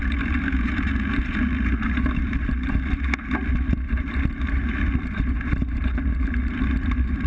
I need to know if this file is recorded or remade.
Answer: remade